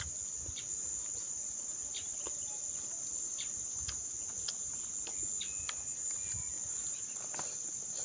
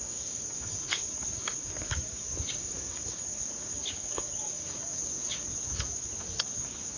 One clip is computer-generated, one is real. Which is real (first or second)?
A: first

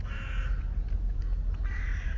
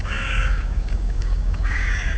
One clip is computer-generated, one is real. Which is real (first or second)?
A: first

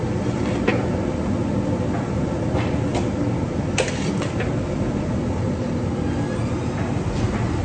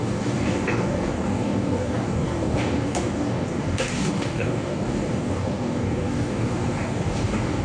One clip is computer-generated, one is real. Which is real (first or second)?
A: first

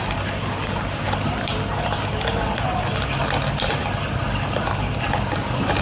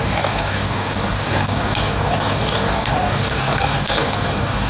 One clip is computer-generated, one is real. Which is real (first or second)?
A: first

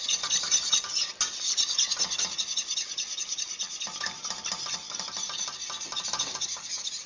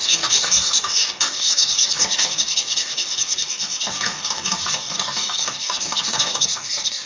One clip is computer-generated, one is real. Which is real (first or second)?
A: first